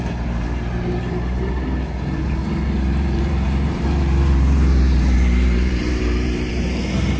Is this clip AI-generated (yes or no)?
yes